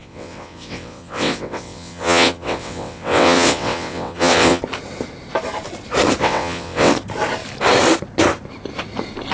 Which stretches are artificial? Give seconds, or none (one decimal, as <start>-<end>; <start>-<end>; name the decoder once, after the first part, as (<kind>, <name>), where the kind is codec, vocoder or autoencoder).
0.0-4.6 (vocoder, WaveNeXt); 6.2-6.9